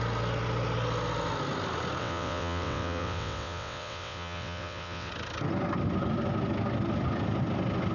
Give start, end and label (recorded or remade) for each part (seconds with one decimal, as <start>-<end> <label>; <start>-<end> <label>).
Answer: 0.0-2.0 recorded; 2.0-5.1 remade; 5.1-7.9 recorded